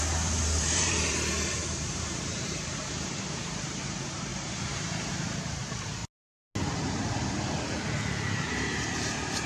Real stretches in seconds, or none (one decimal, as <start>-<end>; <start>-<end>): 6.0-8.5